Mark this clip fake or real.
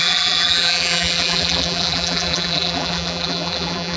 fake